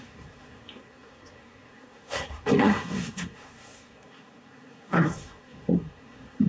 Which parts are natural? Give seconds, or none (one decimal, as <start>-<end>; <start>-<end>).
none